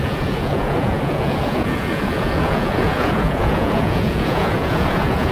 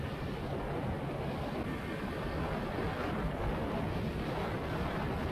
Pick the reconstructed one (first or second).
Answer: first